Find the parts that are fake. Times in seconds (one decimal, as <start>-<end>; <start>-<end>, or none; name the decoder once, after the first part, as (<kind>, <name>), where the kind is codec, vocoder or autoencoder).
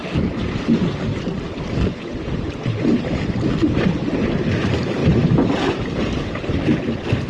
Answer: 5.0-6.4 (vocoder, BigVGAN v2)